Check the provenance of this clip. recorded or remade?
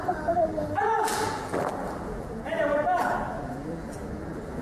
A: remade